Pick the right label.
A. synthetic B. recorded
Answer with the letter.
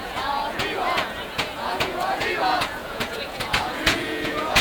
A